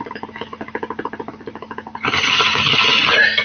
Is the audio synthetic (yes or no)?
no